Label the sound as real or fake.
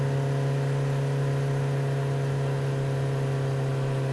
real